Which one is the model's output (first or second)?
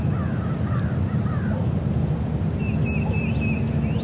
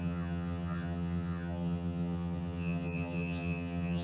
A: second